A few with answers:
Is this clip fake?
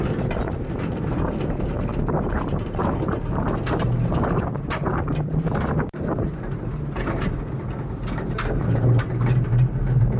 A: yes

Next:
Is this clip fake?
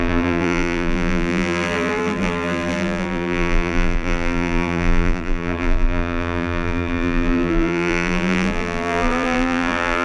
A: yes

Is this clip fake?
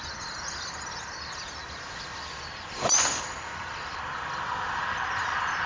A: yes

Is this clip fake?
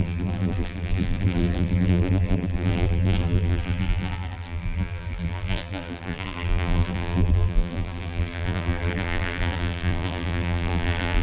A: yes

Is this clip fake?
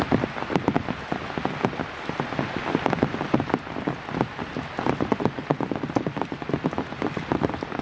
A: yes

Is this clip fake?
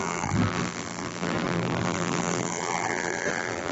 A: yes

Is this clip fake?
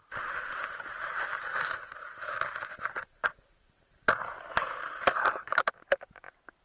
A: yes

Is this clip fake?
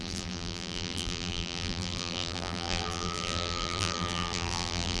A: yes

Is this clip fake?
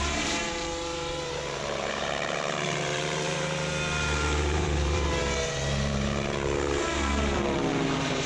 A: yes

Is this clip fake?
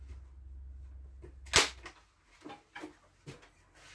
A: no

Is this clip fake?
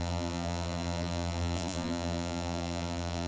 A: yes